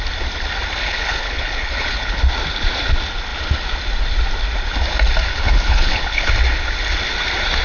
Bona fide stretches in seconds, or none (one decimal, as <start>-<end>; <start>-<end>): 0.0-0.8; 2.2-5.3; 6.3-7.6